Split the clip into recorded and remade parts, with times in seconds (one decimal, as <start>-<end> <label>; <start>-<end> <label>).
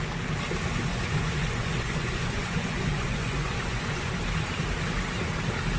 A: 0.0-0.9 recorded; 0.9-4.1 remade; 4.1-5.8 recorded